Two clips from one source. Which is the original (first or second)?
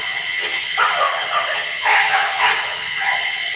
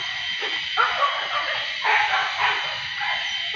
second